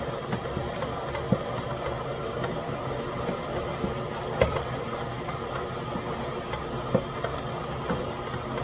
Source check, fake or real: real